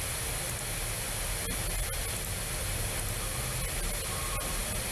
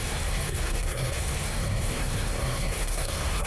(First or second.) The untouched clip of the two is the first